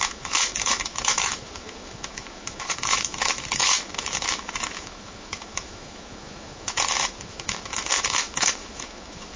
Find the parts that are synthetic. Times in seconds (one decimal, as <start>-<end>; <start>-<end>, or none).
0.0-9.4